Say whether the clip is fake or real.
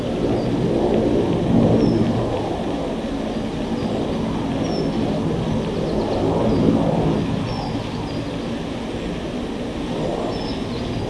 real